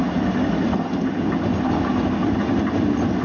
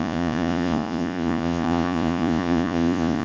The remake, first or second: second